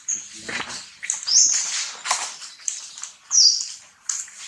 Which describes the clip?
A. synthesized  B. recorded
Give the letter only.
B